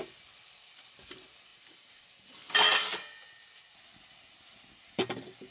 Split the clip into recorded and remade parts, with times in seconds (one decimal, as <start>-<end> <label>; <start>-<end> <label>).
0.0-5.5 recorded

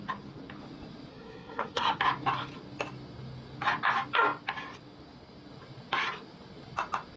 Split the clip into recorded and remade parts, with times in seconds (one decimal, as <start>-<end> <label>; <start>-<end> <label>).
0.0-1.1 recorded; 1.1-2.0 remade; 2.0-7.2 recorded

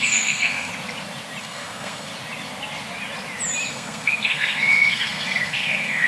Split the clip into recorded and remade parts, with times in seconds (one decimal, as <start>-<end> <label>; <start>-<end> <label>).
0.0-0.7 remade; 0.7-1.4 recorded; 1.4-2.1 remade; 2.1-3.7 recorded; 3.7-6.1 remade

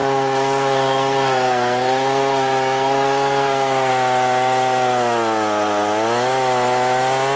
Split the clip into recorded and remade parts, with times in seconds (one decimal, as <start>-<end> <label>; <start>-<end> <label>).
0.0-3.9 remade; 3.9-7.4 recorded